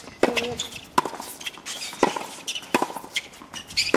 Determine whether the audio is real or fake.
real